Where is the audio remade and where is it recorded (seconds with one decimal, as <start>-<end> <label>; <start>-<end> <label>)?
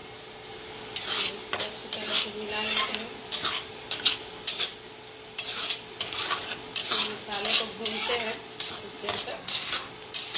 0.0-9.3 recorded; 9.3-9.9 remade; 9.9-10.4 recorded